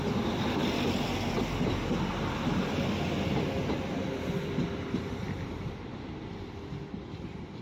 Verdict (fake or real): real